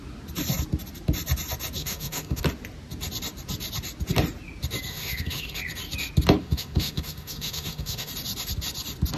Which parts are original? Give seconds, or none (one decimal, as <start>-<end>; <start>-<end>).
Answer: 0.0-1.8; 2.4-4.9; 5.6-6.4; 8.1-9.2